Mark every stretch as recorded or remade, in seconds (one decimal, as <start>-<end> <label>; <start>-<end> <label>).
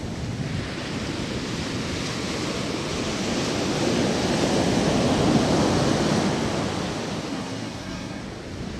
0.0-7.3 recorded; 7.3-8.2 remade; 8.2-8.8 recorded